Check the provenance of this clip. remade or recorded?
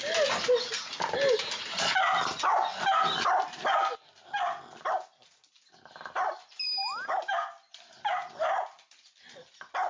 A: recorded